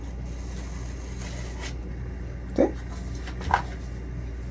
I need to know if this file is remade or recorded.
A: recorded